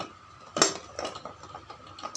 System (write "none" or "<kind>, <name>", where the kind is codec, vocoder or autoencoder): none